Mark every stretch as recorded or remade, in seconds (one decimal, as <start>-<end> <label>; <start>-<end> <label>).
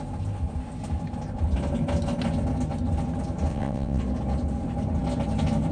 0.0-3.5 recorded; 3.5-4.0 remade; 4.0-5.7 recorded